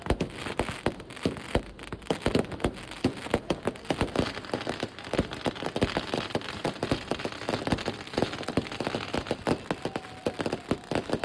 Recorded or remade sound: recorded